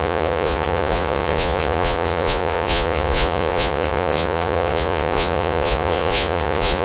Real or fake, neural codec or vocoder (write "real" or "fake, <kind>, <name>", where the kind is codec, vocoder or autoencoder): fake, vocoder, Vocos